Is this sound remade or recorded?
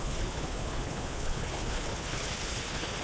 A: remade